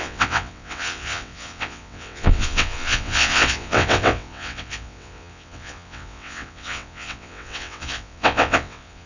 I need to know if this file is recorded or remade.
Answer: remade